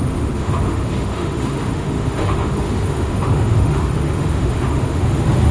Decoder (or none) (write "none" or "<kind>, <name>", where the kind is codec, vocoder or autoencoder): autoencoder, DAC-VAE